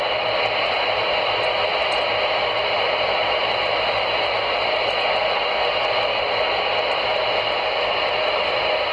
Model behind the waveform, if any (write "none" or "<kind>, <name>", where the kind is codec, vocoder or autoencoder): none